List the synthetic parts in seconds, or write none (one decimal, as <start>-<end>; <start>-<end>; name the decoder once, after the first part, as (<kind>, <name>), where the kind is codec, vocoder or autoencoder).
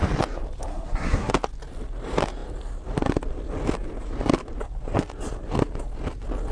0.7-1.3 (codec, SNAC)